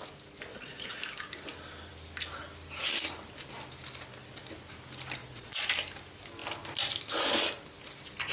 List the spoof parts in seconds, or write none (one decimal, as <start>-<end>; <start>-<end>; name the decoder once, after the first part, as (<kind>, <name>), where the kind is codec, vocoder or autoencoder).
0.5-1.0 (vocoder, Vocos); 5.2-5.7